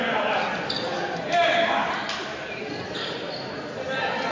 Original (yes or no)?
yes